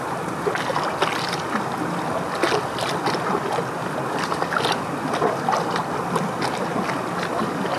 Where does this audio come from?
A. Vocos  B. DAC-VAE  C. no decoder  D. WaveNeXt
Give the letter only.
C